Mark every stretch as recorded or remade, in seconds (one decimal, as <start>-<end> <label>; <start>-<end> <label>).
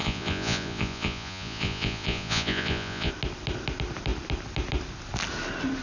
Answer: 0.0-3.1 remade; 3.1-5.8 recorded